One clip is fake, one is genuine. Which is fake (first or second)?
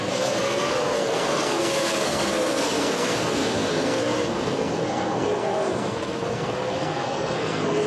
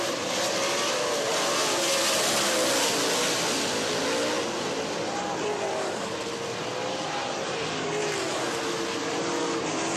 first